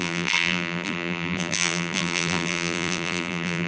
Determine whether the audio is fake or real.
fake